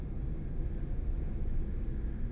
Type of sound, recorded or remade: recorded